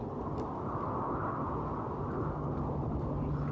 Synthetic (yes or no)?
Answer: no